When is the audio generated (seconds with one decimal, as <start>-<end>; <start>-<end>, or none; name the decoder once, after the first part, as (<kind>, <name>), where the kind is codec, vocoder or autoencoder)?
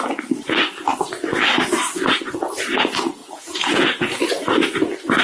3.2-4.2 (vocoder, Vocos)